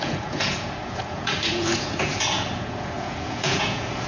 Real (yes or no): no